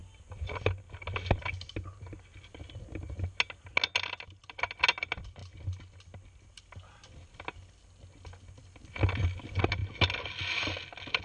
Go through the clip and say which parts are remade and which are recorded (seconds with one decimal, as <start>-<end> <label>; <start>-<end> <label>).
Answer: 0.0-11.2 recorded